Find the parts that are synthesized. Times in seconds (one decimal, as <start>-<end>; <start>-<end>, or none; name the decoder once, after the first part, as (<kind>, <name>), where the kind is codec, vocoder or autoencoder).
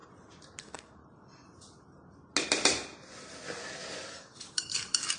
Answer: 0.6-1.0 (codec, DAC); 4.1-5.2